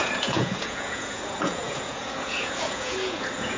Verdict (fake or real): fake